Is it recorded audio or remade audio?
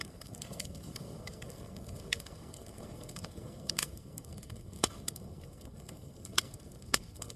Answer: remade